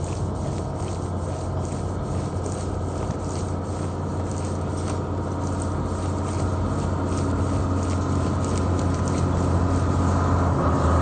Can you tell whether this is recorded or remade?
recorded